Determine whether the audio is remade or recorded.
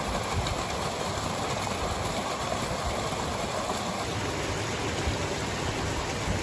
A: recorded